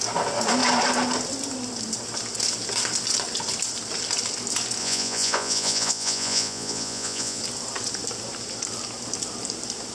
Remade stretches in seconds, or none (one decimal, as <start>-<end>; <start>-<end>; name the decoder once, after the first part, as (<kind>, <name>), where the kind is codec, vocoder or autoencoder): 4.8-7.4 (vocoder, Vocos)